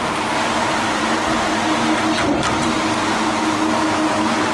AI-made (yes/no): yes